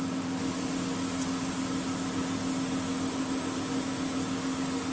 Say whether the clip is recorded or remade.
recorded